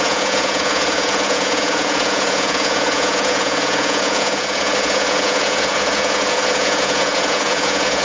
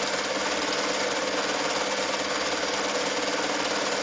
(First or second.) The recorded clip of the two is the second